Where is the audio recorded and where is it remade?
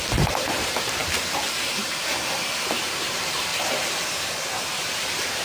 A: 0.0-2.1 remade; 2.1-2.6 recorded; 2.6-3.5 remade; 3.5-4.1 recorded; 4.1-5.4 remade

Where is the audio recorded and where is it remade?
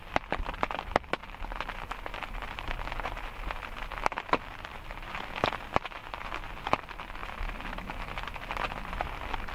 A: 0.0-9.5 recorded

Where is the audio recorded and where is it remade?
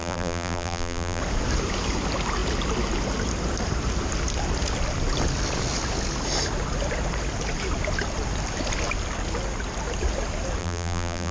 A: 0.0-1.2 remade; 1.2-10.6 recorded; 10.6-11.3 remade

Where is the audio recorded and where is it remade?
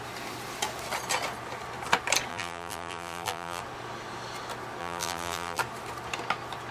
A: 0.0-2.3 recorded; 2.3-3.6 remade; 3.6-4.8 recorded; 4.8-5.6 remade; 5.6-6.7 recorded